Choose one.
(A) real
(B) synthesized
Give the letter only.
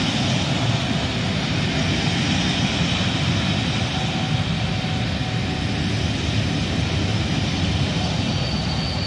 A